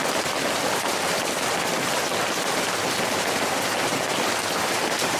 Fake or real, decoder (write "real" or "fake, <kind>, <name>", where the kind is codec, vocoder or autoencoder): real